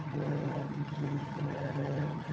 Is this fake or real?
fake